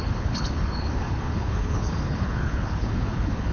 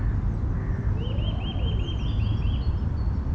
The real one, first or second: second